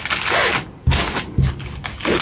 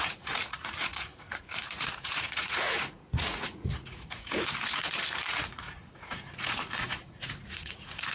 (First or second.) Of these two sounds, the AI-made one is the second